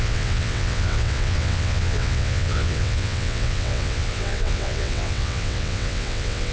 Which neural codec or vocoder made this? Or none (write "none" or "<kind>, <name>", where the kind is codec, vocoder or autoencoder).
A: vocoder, WaveNeXt